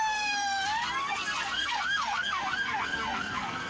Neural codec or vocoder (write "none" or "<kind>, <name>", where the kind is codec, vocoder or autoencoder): codec, SNAC